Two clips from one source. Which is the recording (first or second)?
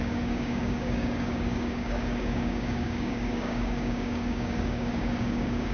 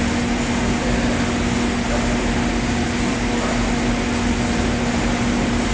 second